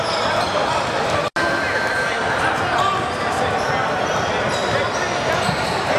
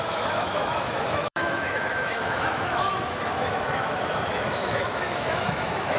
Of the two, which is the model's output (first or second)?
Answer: second